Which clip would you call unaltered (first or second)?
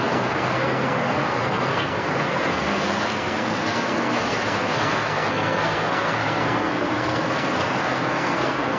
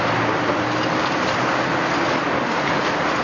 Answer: second